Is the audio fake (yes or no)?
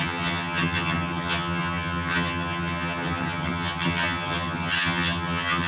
yes